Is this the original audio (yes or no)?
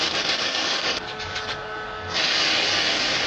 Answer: no